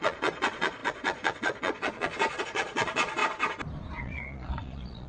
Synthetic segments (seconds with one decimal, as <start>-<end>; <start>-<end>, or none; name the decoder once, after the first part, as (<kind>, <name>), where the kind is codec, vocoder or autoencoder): 0.0-3.2 (vocoder, Vocos); 4.0-5.1